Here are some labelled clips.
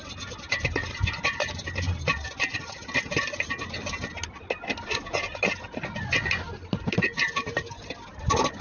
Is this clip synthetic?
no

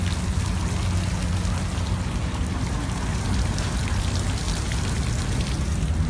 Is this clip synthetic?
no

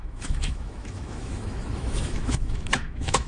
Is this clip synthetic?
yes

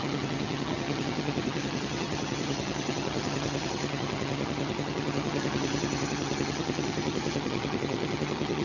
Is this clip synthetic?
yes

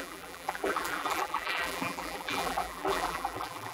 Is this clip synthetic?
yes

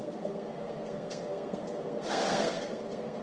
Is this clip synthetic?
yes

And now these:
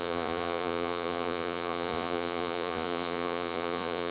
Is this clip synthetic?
yes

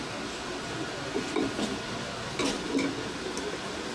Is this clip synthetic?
no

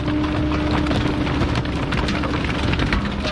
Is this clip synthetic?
no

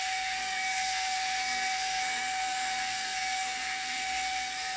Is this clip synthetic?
yes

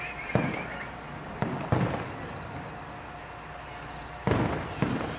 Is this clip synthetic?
no